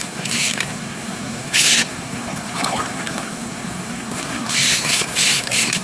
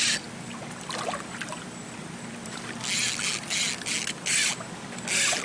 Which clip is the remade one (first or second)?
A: first